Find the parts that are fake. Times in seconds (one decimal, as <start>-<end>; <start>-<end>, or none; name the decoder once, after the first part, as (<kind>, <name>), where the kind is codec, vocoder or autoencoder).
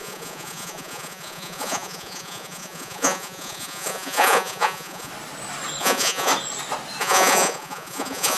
0.0-5.1 (vocoder, Vocos); 5.8-6.3; 7.0-8.4